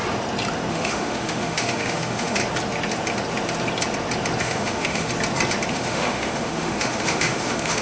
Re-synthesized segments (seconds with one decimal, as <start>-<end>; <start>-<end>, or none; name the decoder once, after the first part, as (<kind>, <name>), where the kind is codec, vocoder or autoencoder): 0.7-2.4 (autoencoder, DAC-VAE); 4.4-5.1; 5.7-7.8